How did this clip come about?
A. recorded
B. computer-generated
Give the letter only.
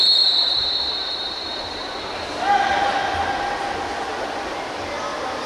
A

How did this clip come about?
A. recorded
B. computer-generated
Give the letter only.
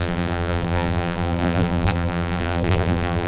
B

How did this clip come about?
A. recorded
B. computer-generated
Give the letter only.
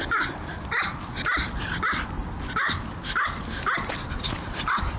B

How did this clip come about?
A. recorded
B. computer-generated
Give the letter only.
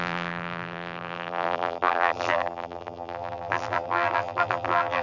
B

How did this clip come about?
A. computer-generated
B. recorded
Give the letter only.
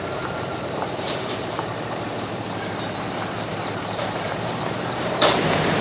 A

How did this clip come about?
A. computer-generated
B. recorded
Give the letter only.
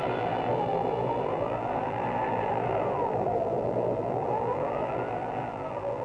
A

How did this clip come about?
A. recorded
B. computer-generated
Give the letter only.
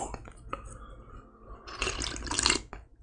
A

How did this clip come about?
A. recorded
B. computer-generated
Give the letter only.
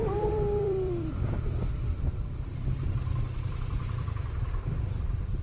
B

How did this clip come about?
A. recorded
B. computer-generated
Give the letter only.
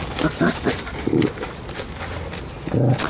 A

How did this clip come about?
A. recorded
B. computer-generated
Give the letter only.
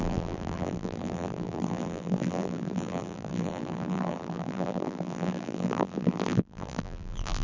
B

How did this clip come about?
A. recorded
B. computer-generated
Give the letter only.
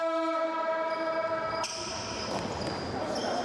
A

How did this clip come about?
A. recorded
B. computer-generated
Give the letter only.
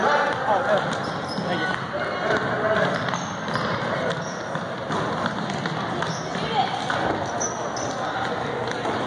A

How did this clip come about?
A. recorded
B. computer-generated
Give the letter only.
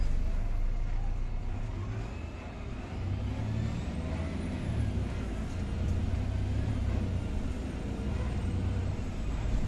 A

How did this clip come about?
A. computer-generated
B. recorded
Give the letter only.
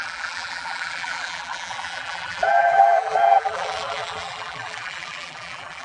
A